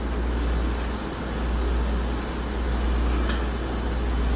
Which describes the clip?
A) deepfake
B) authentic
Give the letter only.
B